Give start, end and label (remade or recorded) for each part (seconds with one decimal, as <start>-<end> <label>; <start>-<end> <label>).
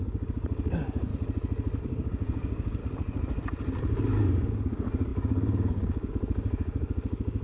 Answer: 0.0-1.1 remade; 1.1-1.8 recorded; 1.8-2.8 remade; 2.8-3.8 recorded; 3.8-7.4 remade